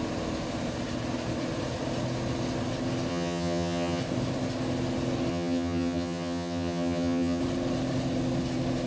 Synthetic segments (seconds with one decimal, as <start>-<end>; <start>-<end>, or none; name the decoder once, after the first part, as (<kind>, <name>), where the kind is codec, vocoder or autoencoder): 3.1-4.0 (vocoder, HiFi-GAN); 5.3-7.4